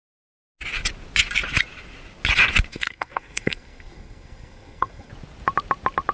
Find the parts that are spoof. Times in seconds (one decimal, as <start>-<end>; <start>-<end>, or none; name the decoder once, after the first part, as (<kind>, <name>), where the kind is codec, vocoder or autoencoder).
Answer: 2.7-5.1 (codec, SNAC)